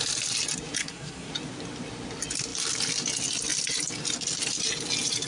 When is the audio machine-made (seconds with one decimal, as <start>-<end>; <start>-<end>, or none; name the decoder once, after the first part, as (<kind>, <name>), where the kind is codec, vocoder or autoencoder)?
0.8-1.3 (codec, SNAC)